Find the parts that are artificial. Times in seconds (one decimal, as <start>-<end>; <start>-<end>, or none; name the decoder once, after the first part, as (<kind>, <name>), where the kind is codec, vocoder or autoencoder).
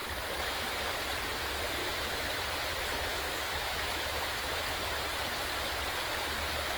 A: 0.0-0.8 (autoencoder, DAC-VAE); 1.8-2.4; 3.1-4.6